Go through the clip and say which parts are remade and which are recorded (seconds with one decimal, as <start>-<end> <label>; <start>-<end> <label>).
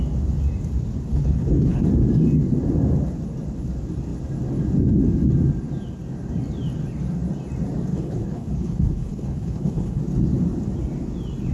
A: 0.0-1.1 recorded; 1.1-1.9 remade; 1.9-7.9 recorded; 7.9-10.0 remade; 10.0-11.5 recorded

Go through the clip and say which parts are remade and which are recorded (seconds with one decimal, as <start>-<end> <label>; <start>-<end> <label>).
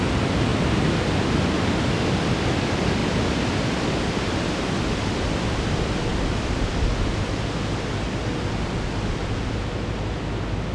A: 0.0-10.7 recorded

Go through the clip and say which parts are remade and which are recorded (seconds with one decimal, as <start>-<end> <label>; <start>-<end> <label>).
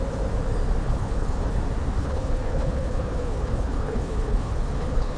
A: 0.0-0.8 recorded; 0.8-1.6 remade; 1.6-2.0 recorded; 2.0-5.2 remade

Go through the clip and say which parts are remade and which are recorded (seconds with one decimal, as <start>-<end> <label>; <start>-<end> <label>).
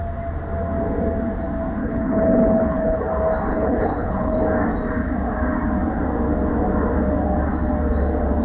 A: 0.0-1.8 recorded; 1.8-3.1 remade; 3.1-3.5 recorded; 3.5-4.4 remade; 4.4-8.4 recorded